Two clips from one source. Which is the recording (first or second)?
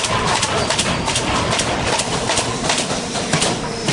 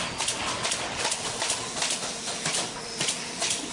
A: second